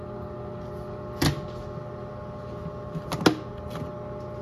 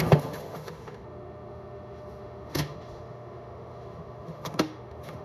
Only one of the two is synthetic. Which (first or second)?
second